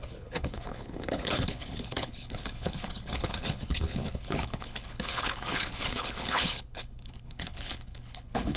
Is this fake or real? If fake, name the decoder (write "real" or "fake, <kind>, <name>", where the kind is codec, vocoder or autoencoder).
fake, codec, HILCodec